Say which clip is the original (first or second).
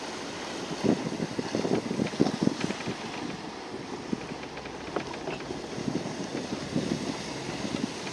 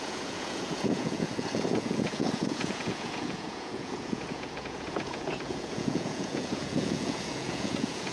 first